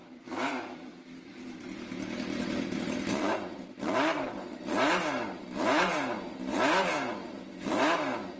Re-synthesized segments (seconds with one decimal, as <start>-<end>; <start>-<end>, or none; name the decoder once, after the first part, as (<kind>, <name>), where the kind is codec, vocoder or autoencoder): 0.0-3.6 (vocoder, BigVGAN v2)